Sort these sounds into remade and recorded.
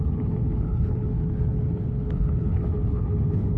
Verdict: remade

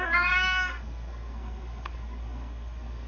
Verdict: remade